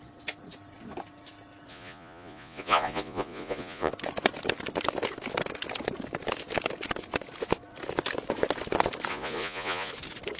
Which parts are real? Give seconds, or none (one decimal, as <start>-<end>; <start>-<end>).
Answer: 0.0-1.7; 3.9-9.1; 9.9-10.4

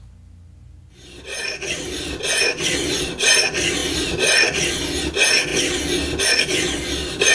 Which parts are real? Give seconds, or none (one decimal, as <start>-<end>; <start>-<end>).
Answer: 0.0-7.3

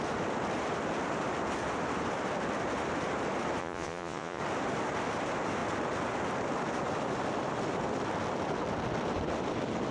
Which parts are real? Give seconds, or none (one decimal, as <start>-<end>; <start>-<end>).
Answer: 0.0-3.6; 4.4-9.9

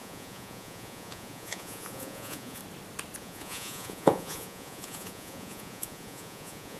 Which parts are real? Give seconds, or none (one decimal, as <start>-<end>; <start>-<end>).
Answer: 2.6-3.2

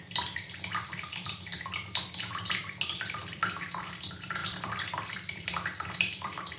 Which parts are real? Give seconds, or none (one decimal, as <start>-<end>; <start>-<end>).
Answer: 0.0-3.2; 3.7-4.4

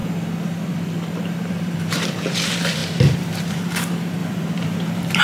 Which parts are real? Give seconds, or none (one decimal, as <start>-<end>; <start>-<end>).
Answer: 0.0-1.1

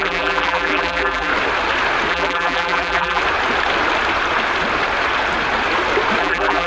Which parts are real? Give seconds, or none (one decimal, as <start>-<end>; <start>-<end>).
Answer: 1.3-2.1; 3.2-6.2

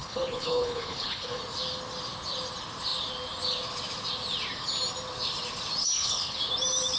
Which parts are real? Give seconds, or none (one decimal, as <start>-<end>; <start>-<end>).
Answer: 1.4-5.8; 6.4-7.0